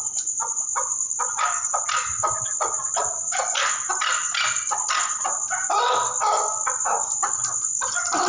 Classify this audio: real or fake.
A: real